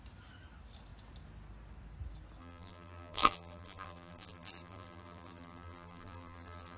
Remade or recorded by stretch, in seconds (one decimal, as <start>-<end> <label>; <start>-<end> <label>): 0.0-2.4 recorded; 2.4-6.8 remade